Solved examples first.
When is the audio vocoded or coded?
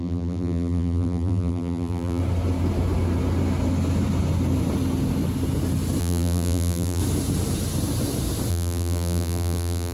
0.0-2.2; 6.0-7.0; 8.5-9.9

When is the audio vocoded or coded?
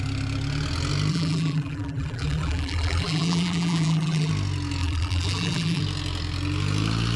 1.1-4.3; 4.8-5.8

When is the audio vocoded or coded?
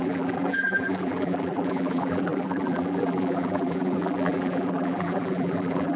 0.0-6.0